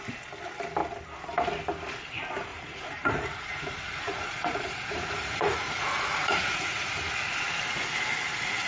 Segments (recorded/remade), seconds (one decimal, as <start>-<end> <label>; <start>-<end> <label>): 0.0-2.5 recorded; 2.5-6.9 remade; 6.9-8.7 recorded